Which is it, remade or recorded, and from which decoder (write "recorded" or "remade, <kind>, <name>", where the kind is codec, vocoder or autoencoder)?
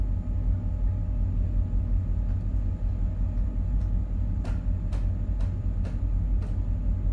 recorded